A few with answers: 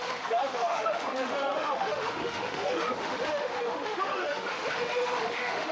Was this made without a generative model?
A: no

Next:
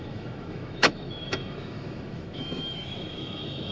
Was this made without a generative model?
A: no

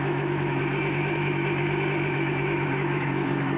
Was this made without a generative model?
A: no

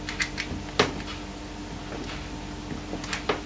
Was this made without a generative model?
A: yes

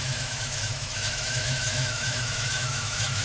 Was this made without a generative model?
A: no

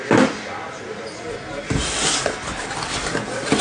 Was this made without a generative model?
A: yes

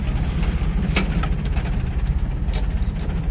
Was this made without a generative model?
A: yes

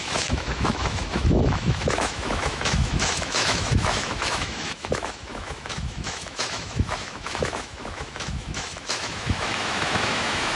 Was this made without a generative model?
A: no